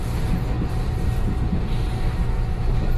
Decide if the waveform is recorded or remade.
recorded